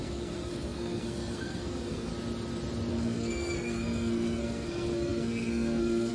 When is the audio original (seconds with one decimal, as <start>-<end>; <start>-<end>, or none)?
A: 2.1-2.9